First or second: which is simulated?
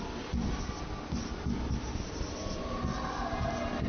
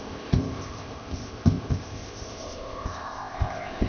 second